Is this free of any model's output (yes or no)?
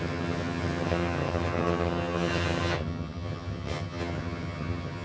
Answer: no